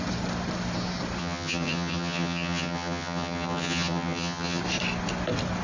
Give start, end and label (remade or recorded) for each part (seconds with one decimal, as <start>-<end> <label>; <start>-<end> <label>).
0.0-1.2 recorded; 1.2-4.6 remade; 4.6-5.6 recorded